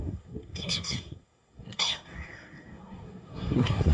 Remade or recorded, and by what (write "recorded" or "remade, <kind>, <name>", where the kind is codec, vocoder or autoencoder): remade, codec, SNAC